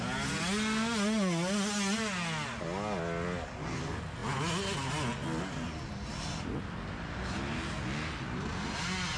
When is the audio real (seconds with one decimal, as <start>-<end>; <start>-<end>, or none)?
0.0-9.2